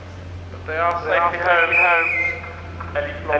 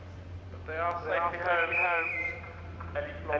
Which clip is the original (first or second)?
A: first